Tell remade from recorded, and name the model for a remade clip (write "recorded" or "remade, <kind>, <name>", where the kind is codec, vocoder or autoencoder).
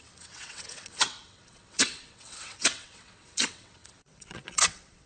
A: remade, vocoder, WaveNeXt